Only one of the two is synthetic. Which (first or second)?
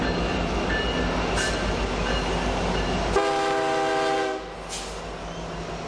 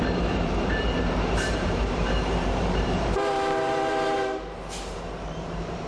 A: second